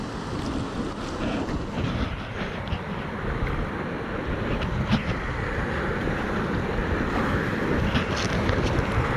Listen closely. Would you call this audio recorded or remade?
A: recorded